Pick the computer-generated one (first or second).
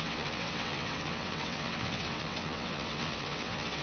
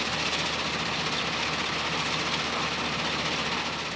first